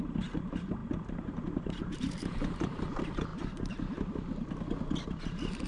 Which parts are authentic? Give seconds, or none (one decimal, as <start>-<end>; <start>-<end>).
3.3-5.2